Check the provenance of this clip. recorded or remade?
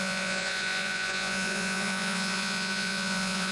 remade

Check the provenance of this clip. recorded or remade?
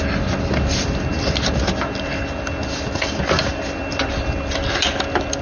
recorded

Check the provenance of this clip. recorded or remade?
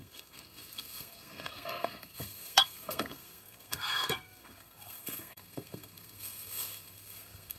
remade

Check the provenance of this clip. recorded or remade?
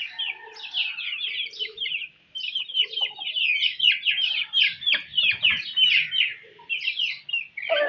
recorded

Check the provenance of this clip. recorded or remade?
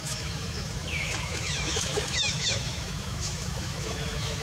remade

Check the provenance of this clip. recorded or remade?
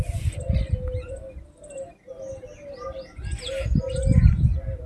recorded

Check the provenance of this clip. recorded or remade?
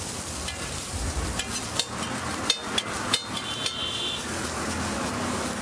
recorded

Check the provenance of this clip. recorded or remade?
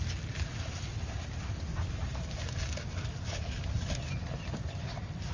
recorded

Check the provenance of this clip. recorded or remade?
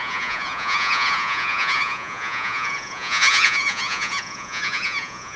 remade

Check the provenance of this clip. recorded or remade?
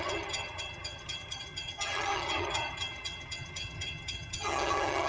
remade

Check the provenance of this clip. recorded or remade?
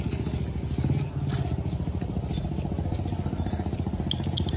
recorded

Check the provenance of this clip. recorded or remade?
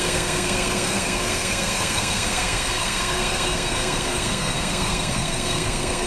remade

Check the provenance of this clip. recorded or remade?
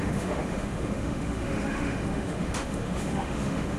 remade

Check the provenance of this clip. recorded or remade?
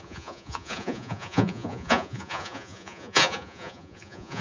remade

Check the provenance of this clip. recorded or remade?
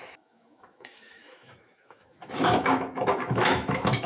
remade